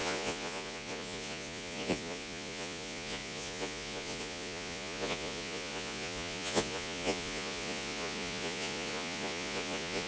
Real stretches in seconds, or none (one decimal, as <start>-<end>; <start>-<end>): none